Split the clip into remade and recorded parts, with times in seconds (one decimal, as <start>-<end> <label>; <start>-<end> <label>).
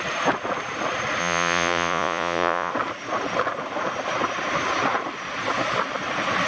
0.0-1.2 recorded; 1.2-2.7 remade; 2.7-6.5 recorded